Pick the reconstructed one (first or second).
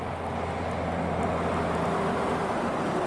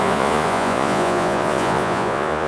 second